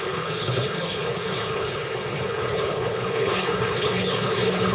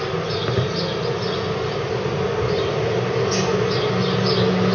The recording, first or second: second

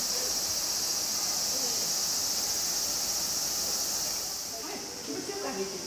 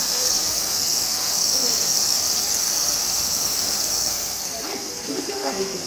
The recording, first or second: first